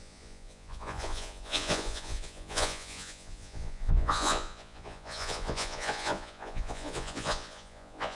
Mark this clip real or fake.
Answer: fake